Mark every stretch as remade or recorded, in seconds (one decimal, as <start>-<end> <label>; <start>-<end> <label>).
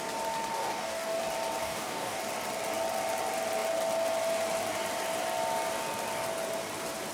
0.0-0.5 recorded; 0.5-1.2 remade; 1.2-1.6 recorded; 1.6-2.2 remade; 2.2-7.1 recorded